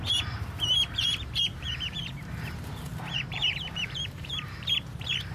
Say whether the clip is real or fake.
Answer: fake